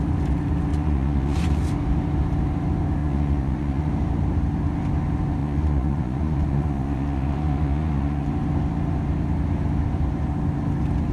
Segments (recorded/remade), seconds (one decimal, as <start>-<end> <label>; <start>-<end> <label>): 0.0-0.7 recorded; 0.7-1.6 remade; 1.6-3.0 recorded; 3.0-3.9 remade; 3.9-5.4 recorded; 5.4-8.3 remade; 8.3-11.1 recorded